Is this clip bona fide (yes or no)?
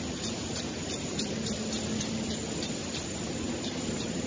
yes